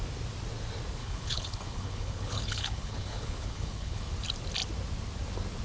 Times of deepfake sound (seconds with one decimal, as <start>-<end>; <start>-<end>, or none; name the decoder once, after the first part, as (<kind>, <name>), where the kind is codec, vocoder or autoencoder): 1.0-4.1 (codec, HILCodec)